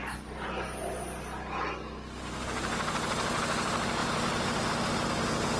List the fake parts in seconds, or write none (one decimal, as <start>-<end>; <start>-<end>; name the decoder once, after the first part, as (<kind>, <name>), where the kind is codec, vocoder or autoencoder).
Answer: none